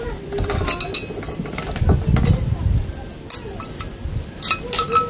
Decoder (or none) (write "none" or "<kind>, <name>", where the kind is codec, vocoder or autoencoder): none